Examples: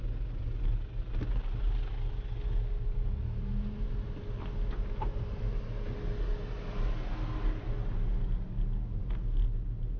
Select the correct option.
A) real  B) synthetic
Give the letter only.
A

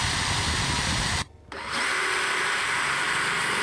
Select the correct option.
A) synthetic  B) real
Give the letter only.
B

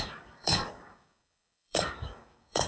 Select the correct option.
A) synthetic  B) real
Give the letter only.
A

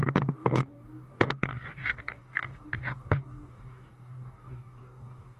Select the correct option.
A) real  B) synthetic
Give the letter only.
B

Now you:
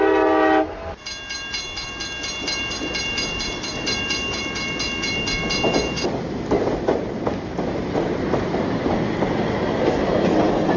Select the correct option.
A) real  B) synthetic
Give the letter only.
A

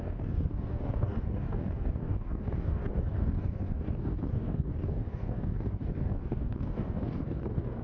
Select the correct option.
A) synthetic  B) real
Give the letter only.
A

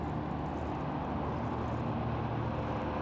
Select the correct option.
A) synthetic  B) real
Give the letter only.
B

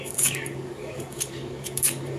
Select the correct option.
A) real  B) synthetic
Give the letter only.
B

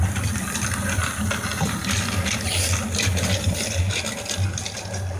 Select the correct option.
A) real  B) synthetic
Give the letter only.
A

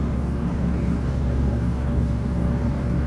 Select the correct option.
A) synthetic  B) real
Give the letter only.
A